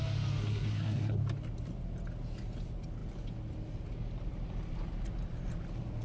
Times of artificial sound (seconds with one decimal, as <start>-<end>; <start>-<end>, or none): 0.4-1.2